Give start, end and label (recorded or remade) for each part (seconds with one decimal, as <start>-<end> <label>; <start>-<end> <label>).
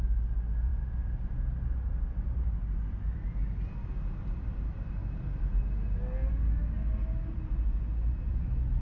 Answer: 0.0-8.8 recorded